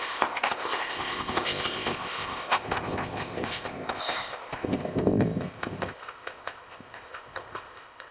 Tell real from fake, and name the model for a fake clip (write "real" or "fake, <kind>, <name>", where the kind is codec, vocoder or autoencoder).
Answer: fake, codec, ZipCodec